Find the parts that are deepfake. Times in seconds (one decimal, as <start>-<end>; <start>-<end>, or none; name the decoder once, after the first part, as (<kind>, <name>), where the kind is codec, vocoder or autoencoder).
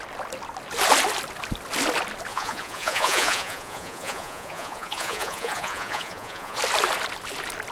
2.3-6.6 (vocoder, Vocos)